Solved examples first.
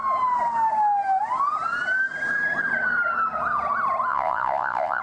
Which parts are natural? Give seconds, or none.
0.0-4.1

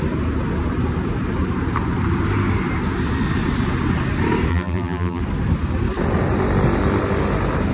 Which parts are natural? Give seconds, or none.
0.0-4.5; 5.2-7.7

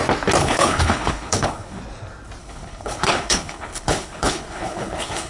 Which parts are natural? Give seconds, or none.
0.0-0.4; 1.8-2.4

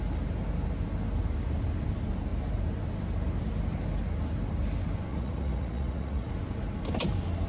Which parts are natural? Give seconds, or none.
0.0-5.1; 6.3-7.5